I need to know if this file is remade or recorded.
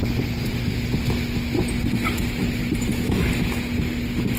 recorded